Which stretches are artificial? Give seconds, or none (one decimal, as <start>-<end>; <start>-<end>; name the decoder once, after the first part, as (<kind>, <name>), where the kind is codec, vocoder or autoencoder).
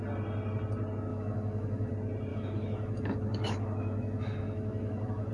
1.1-1.9 (autoencoder, DAC-VAE); 2.3-5.3